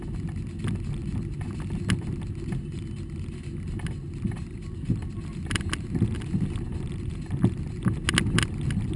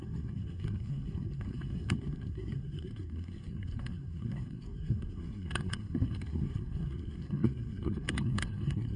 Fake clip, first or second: second